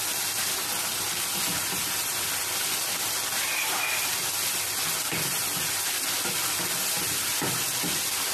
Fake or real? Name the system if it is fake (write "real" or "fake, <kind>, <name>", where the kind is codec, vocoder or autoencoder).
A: real